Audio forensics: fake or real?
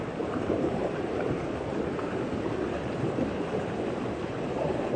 fake